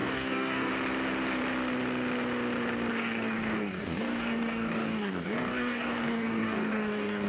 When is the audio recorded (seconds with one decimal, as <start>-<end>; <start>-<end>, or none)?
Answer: 0.7-2.9